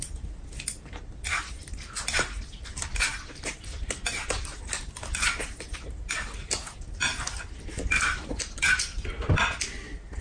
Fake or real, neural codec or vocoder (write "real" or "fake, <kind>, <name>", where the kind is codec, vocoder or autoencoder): real